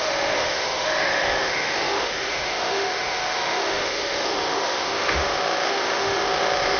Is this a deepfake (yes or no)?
yes